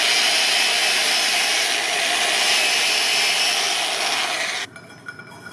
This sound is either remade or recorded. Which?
recorded